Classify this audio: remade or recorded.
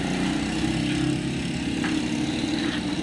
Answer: recorded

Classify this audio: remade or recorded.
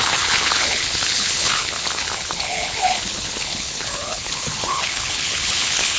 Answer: remade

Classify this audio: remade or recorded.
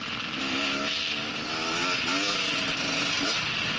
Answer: recorded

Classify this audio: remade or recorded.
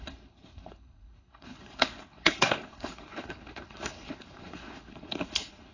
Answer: remade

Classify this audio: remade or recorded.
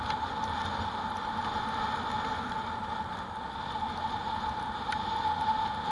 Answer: recorded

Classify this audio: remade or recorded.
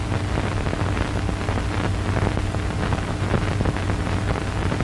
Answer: recorded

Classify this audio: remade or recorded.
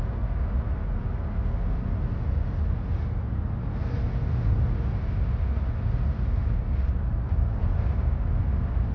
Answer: recorded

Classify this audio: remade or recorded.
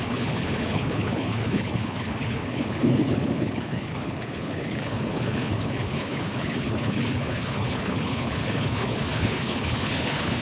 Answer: remade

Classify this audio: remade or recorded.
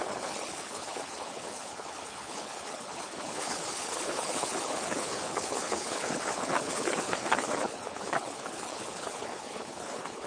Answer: remade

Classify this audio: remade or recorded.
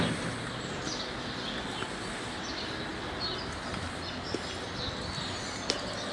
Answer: recorded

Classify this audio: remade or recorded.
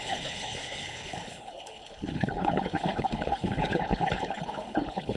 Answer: remade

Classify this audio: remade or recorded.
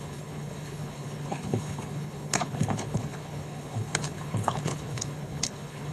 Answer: remade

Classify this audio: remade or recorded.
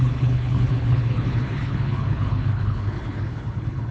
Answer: remade